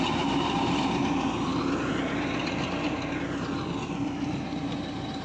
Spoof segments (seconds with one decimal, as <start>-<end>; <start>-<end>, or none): none